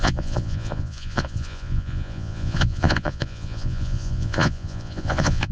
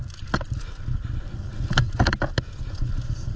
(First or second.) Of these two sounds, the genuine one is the second